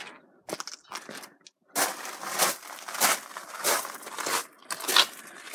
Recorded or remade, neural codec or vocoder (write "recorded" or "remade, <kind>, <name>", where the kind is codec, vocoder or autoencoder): recorded